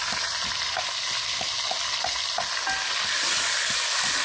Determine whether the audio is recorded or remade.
recorded